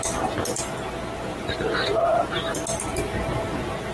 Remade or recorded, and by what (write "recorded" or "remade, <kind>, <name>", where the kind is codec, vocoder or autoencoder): recorded